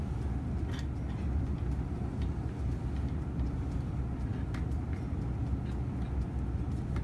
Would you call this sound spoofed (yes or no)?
no